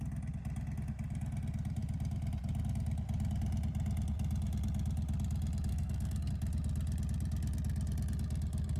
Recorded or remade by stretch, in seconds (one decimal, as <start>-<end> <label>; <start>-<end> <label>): 0.0-5.7 recorded; 5.7-6.3 remade; 6.3-8.8 recorded